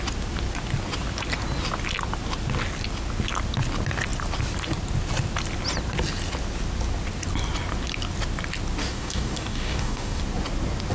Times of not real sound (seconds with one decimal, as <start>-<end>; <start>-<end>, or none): 8.8-10.2